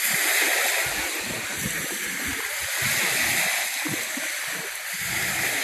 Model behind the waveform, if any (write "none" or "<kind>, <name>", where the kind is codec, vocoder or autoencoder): none